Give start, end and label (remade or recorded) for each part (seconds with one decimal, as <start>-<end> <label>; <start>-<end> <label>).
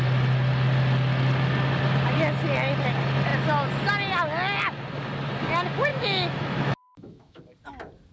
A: 0.0-5.9 recorded; 5.9-7.4 remade; 7.4-8.1 recorded